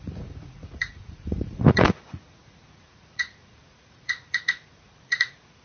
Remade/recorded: remade